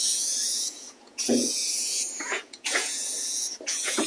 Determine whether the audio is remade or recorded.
remade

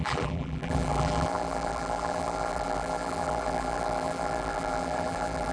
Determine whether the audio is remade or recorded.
remade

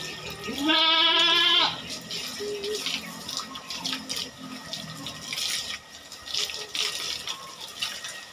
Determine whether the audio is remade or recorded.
recorded